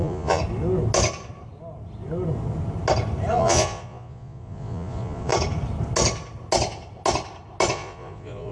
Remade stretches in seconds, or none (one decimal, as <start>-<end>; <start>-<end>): 0.0-0.4; 3.3-5.3; 7.7-8.5